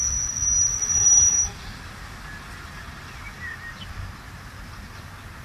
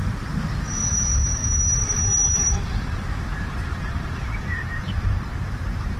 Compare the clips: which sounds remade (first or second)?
second